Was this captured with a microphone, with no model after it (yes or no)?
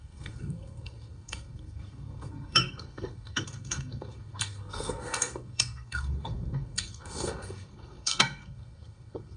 no